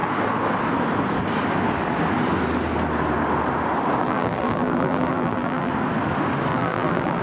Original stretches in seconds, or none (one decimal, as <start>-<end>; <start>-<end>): 0.0-4.0; 5.7-6.5